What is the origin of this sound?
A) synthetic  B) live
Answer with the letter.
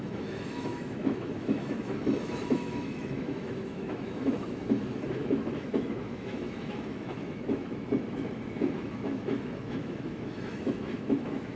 A